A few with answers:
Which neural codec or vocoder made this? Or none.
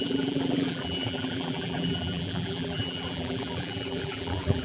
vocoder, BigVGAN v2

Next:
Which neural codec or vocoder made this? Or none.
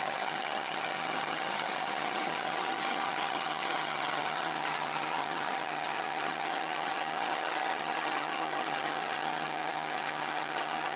vocoder, HiFi-GAN